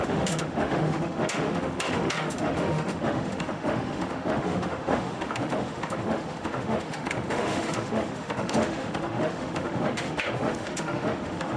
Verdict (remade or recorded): remade